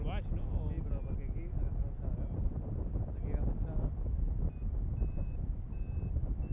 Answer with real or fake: real